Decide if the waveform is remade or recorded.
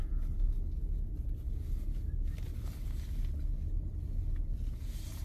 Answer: recorded